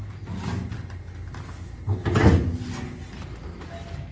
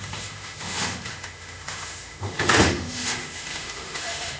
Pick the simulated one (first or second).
second